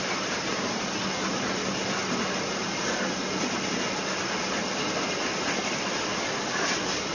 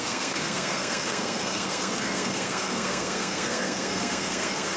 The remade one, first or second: second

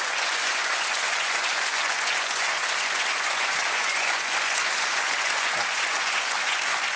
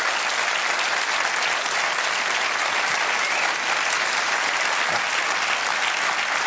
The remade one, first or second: first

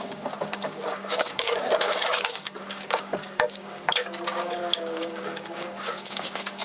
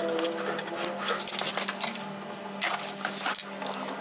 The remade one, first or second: first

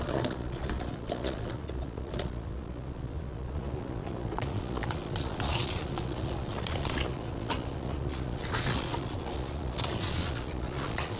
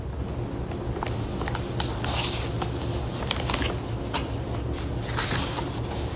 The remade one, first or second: first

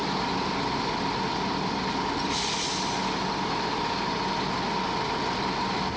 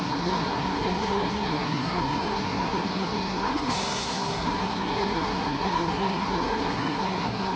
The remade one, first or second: second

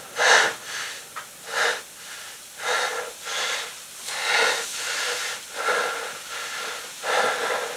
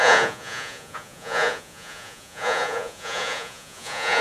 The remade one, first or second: second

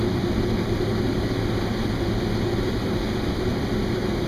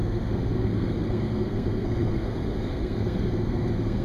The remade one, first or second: second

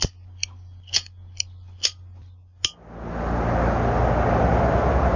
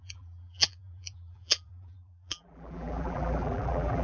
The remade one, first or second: second